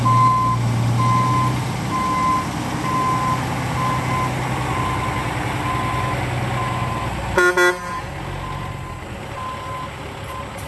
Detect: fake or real real